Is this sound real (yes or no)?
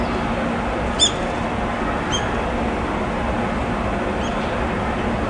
yes